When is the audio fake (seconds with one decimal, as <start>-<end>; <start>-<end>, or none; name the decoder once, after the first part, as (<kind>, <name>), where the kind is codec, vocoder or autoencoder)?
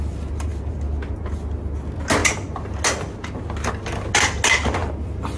none